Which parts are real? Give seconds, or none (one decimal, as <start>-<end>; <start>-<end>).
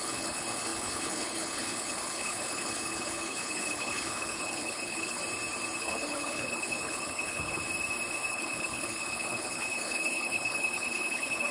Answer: 5.2-5.8; 7.6-8.3